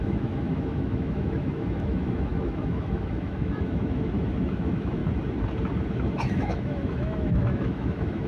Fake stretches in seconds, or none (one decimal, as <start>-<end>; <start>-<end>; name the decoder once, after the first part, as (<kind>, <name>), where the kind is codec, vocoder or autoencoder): 0.0-5.0 (autoencoder, DAC-VAE); 5.9-8.3